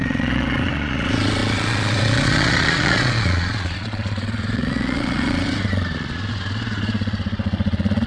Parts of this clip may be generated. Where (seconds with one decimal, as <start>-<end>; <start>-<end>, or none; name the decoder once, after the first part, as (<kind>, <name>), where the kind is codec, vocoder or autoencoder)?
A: 0.0-8.1 (vocoder, Vocos)